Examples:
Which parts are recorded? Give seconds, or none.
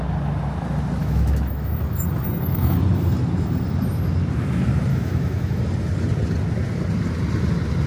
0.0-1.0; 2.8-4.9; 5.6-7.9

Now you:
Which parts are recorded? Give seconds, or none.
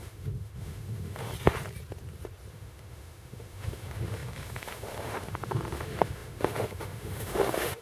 1.3-2.5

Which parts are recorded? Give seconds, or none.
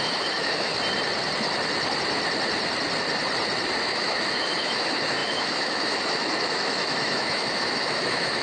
0.7-3.9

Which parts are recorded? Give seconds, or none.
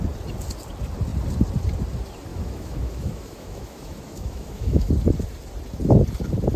0.0-2.3; 4.9-6.6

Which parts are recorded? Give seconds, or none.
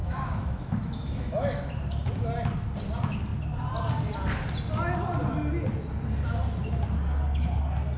1.6-8.0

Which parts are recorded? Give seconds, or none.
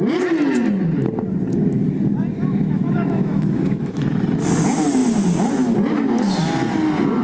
0.0-2.5; 4.0-7.2